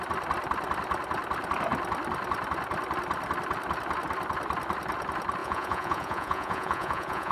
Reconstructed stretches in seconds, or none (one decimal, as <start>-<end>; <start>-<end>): 5.4-7.3